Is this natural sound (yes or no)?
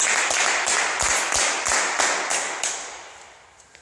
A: yes